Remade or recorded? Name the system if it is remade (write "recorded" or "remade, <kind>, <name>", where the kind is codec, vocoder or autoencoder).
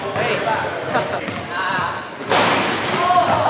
recorded